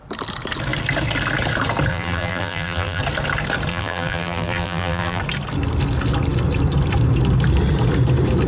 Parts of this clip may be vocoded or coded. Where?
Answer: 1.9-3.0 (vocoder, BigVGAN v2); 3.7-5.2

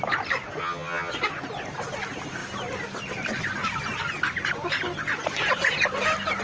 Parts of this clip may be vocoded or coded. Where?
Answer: 0.6-1.1 (vocoder, HiFi-GAN)